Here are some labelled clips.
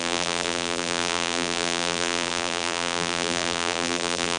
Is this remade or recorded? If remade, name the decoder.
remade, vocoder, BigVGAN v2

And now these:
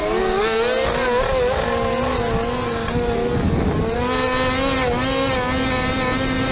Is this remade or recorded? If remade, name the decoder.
recorded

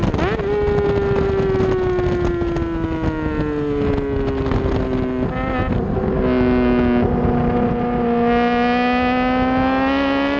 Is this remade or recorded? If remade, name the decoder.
recorded